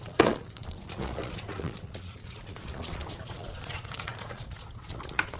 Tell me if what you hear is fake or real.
fake